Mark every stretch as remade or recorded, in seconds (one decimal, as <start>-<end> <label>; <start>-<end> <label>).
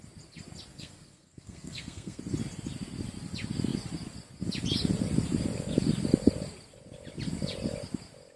0.0-0.7 recorded; 0.7-2.2 remade; 2.2-8.4 recorded